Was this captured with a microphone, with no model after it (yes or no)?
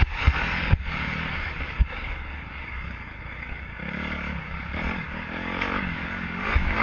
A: no